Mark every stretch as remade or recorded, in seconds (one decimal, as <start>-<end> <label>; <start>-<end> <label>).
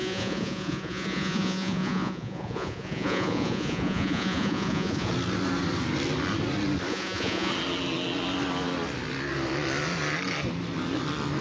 0.0-5.1 remade; 5.1-6.9 recorded; 6.9-7.5 remade; 7.5-11.4 recorded